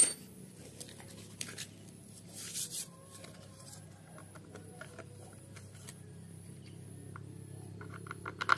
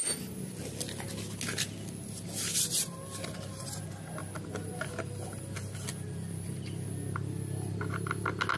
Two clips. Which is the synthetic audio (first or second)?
first